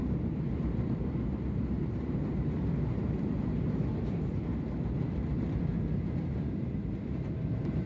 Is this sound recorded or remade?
remade